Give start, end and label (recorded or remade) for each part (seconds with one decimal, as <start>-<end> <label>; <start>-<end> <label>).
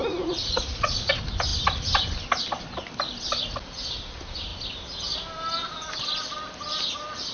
0.0-0.4 recorded; 0.4-1.1 remade; 1.1-7.3 recorded